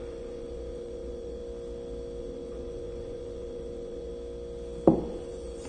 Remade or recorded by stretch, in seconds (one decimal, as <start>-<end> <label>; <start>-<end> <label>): 0.0-1.4 remade; 1.4-2.2 recorded; 2.2-4.1 remade; 4.1-5.1 recorded; 5.1-5.7 remade